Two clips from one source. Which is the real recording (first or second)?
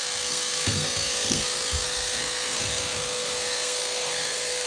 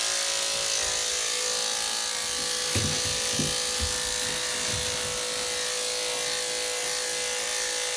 second